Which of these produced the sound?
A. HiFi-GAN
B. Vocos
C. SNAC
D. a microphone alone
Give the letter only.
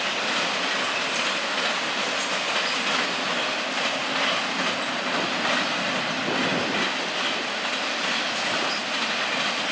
D